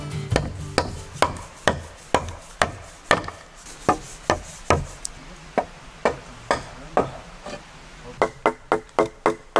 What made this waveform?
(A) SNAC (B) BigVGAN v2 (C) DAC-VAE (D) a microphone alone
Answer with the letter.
D